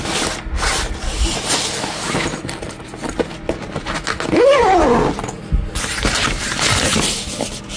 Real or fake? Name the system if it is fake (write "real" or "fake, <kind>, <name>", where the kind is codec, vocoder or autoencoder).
real